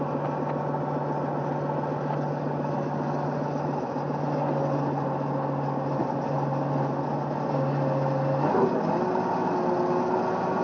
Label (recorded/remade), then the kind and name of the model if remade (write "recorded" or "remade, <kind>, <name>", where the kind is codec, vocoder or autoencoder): recorded